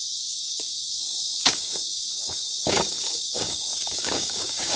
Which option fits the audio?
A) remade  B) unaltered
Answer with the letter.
A